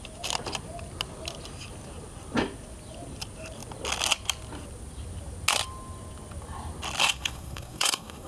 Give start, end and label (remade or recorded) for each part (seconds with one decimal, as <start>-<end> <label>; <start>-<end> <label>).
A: 0.0-7.0 recorded; 7.0-8.3 remade